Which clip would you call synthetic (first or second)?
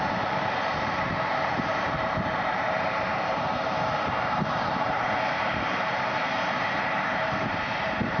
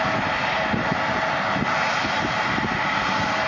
first